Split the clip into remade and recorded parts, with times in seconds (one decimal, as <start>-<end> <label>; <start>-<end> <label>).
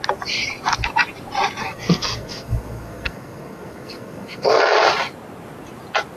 0.0-1.6 recorded; 1.6-4.6 remade; 4.6-6.2 recorded